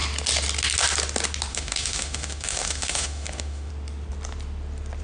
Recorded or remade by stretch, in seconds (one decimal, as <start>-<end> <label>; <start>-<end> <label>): 0.0-1.5 recorded; 1.5-3.7 remade; 3.7-5.0 recorded